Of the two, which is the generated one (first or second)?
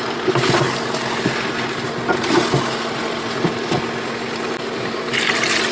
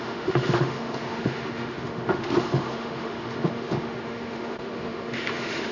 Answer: second